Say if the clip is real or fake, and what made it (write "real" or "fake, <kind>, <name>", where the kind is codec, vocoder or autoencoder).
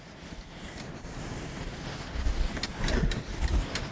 real